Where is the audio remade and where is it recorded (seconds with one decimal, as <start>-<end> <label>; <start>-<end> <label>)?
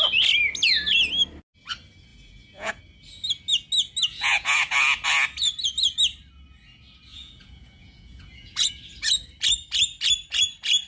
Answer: 0.0-2.1 recorded; 2.1-2.8 remade; 2.8-4.1 recorded; 4.1-4.6 remade; 4.6-7.1 recorded; 7.1-8.7 remade; 8.7-10.9 recorded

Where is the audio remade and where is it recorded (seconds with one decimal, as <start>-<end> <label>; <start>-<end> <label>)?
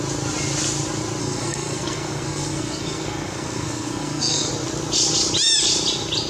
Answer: 0.0-1.2 recorded; 1.2-4.5 remade; 4.5-6.3 recorded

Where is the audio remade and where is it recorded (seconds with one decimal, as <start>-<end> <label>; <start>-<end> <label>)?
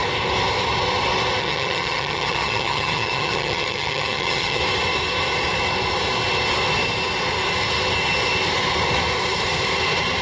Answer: 0.0-1.4 recorded; 1.4-4.6 remade; 4.6-10.2 recorded